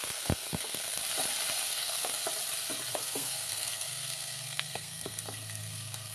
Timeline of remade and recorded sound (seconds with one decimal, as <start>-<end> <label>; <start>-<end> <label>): 0.0-1.0 remade; 1.0-1.7 recorded; 1.7-2.2 remade; 2.2-2.9 recorded; 2.9-6.1 remade